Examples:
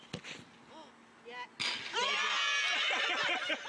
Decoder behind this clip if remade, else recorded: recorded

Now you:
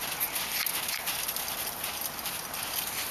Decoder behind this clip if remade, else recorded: recorded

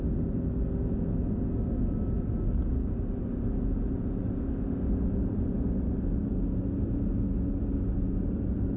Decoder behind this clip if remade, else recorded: recorded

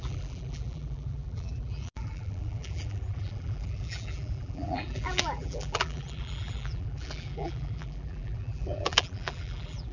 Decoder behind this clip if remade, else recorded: remade, vocoder, BigVGAN v2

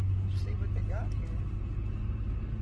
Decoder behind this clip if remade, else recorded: recorded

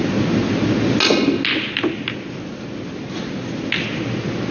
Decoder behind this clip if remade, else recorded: recorded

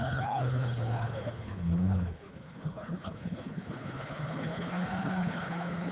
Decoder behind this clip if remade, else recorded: remade, codec, HILCodec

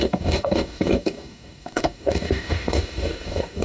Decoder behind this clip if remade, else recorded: remade, codec, DAC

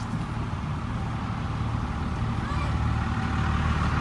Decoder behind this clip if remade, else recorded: recorded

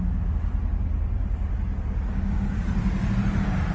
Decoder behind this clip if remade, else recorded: recorded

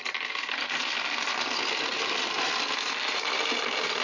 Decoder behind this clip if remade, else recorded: recorded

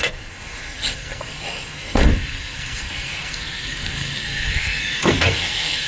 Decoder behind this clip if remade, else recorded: remade, codec, SNAC